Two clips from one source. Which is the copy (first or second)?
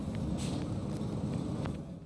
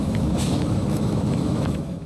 second